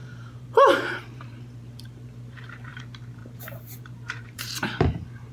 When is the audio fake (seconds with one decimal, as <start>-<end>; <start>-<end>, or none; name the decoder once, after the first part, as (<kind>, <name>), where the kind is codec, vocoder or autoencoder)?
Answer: 0.0-2.8 (vocoder, BigVGAN v2); 3.2-5.3